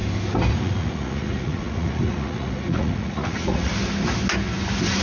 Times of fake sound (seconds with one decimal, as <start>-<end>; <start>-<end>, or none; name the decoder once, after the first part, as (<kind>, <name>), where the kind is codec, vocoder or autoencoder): 0.6-3.7 (vocoder, Vocos)